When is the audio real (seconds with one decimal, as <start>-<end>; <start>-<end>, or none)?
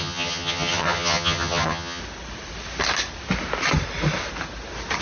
2.0-5.0